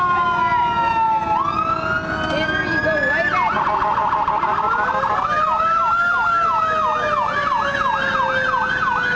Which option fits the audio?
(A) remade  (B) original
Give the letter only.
B